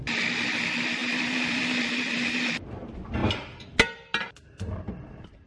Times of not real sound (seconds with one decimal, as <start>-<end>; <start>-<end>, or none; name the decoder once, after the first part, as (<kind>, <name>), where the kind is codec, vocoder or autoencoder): 0.0-3.2 (vocoder, BigVGAN v2); 4.9-5.5